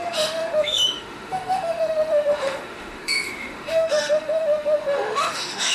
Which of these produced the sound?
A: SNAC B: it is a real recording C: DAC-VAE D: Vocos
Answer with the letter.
C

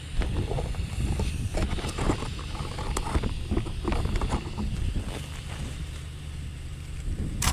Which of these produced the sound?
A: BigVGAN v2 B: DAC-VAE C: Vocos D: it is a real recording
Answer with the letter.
D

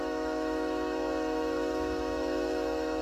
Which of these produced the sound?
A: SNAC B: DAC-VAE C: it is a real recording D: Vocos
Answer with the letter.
B